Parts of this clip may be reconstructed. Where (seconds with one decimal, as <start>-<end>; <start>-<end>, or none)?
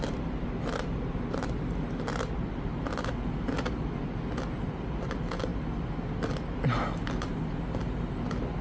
none